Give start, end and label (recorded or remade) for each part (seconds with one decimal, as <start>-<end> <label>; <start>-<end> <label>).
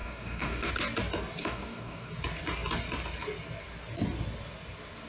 0.0-0.7 remade; 0.7-1.4 recorded; 1.4-2.1 remade; 2.1-5.1 recorded